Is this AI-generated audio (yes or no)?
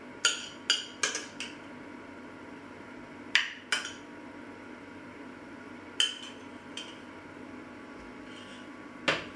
no